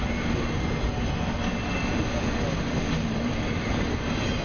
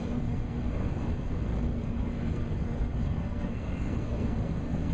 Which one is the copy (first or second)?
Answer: second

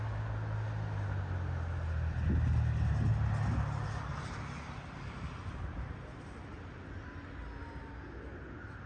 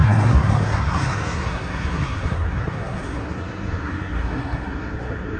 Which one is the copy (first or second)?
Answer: second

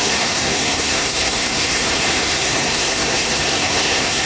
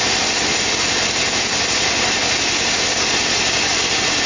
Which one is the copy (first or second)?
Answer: first